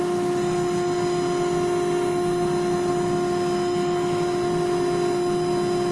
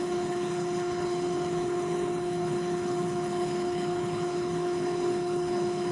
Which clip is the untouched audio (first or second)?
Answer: first